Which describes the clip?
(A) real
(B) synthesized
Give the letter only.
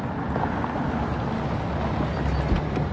A